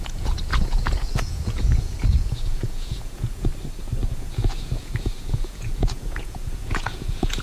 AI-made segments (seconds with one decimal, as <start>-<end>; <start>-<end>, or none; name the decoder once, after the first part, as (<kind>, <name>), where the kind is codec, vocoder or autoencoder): 0.0-3.5 (vocoder, Vocos); 4.1-7.4